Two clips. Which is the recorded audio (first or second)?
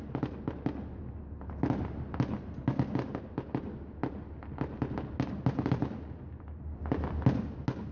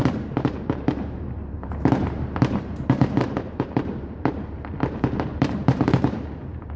first